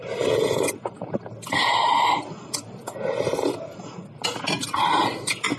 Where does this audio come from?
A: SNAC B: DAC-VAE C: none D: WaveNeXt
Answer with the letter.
C